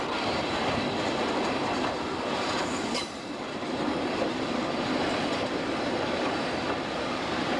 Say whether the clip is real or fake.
fake